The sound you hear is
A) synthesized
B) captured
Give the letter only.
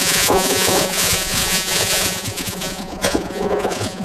A